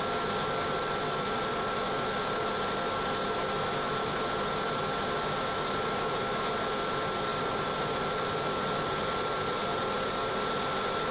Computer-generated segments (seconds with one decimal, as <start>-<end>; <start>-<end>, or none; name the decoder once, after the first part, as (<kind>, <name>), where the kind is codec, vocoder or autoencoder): 7.3-9.0 (vocoder, BigVGAN v2); 9.6-10.3